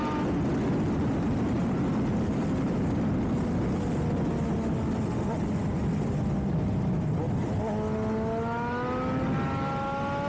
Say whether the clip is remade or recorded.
recorded